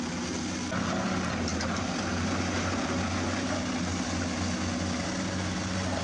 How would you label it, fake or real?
real